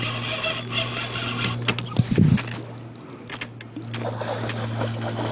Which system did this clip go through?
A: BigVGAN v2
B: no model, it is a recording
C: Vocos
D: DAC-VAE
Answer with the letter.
B